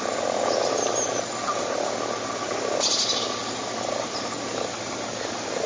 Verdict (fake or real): real